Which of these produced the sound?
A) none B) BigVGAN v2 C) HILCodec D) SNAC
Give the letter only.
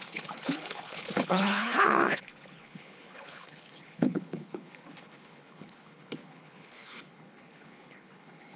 C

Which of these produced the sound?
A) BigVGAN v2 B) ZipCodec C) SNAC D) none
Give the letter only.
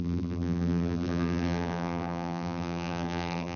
A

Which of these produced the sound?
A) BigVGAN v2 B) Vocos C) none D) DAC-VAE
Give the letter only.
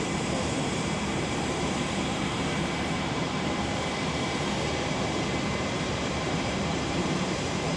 A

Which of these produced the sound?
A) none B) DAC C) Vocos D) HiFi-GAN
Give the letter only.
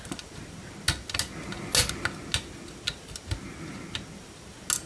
A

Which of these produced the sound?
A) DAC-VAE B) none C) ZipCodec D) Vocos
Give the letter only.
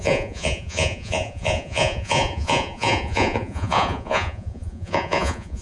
D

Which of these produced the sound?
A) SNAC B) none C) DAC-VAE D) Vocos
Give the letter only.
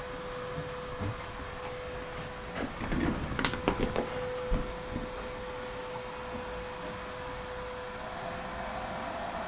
B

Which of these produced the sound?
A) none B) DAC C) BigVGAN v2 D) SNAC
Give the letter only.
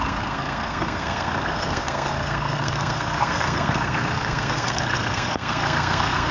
D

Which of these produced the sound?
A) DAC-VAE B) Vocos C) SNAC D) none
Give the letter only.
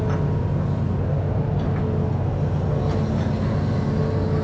D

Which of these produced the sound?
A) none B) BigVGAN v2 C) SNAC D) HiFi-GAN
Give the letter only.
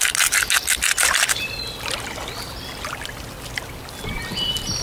A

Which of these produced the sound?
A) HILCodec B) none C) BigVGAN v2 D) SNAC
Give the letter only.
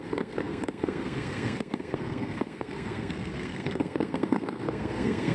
D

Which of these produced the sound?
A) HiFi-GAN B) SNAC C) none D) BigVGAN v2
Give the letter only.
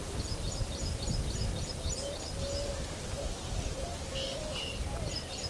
C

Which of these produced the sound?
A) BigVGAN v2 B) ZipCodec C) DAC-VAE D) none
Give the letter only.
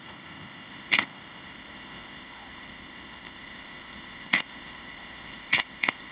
B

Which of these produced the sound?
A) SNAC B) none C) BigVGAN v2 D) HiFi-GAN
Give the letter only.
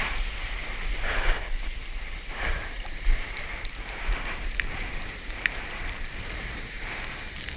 C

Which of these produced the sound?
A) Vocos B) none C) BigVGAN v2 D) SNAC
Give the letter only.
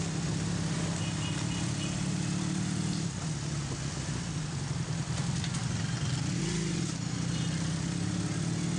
B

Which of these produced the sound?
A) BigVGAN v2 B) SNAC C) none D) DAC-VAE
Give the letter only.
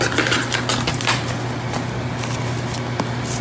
C